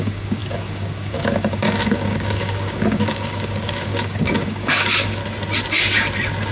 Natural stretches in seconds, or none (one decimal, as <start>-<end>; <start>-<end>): 5.2-6.5